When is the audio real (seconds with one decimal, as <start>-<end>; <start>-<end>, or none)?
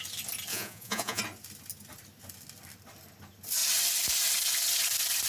0.0-0.5; 1.2-5.3